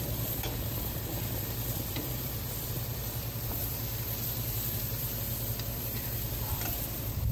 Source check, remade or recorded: remade